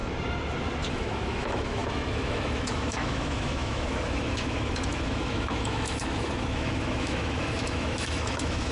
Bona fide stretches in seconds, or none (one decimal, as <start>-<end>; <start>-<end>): 0.0-0.9